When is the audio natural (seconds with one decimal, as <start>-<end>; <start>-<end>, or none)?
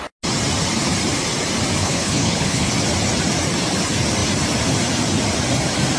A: 0.0-1.8; 2.7-6.0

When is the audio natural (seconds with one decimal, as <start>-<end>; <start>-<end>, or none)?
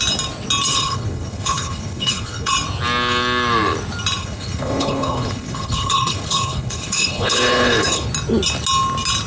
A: 0.0-0.7; 2.5-4.2; 8.1-9.3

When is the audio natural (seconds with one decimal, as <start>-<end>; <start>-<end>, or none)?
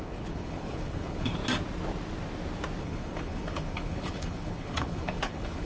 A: 1.4-2.8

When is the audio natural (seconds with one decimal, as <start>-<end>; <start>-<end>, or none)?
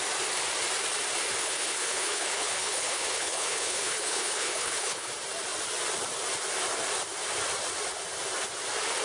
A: 0.0-1.4; 5.1-9.0